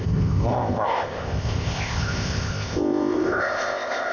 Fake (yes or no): yes